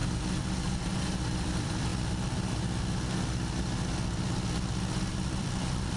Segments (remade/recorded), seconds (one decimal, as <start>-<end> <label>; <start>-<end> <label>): 0.0-1.0 recorded; 1.0-1.9 remade; 1.9-5.1 recorded; 5.1-6.0 remade